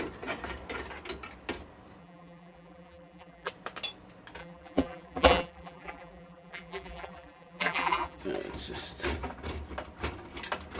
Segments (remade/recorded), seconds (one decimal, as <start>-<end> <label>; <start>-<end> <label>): 0.0-2.0 recorded; 2.0-3.5 remade; 3.5-4.4 recorded; 4.4-8.2 remade; 8.2-10.8 recorded